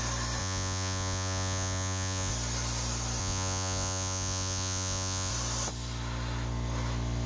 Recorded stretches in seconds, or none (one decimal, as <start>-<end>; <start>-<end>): 0.0-0.4; 2.3-3.2; 5.3-7.3